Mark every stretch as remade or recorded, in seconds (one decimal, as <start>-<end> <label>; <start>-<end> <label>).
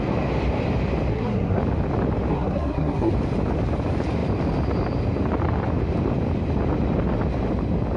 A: 0.0-1.1 recorded; 1.1-1.6 remade; 1.6-2.3 recorded; 2.3-3.1 remade; 3.1-8.0 recorded